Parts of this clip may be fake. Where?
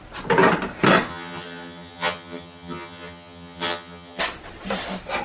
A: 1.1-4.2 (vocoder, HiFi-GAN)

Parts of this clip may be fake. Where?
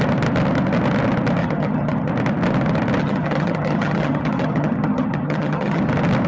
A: 1.4-2.1 (vocoder, HiFi-GAN); 3.0-5.8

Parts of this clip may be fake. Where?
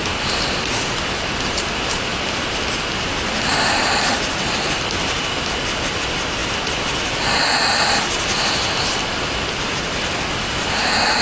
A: none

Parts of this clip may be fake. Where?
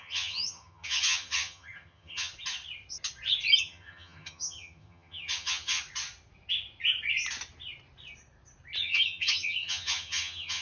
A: 0.0-2.3 (vocoder, HiFi-GAN); 3.6-5.8; 8.8-10.6